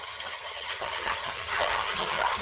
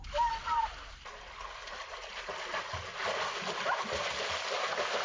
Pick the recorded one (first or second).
second